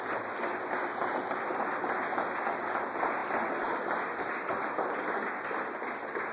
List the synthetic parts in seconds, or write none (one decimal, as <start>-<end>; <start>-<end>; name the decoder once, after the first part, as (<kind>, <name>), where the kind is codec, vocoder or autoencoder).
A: none